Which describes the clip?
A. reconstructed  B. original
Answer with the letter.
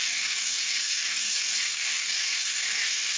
A